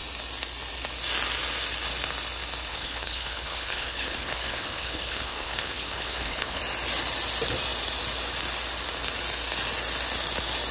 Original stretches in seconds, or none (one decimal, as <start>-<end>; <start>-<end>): 0.0-2.7; 6.6-10.7